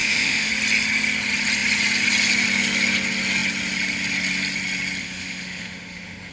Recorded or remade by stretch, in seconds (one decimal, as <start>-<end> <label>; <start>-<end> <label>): 0.0-0.5 remade; 0.5-5.0 recorded; 5.0-6.3 remade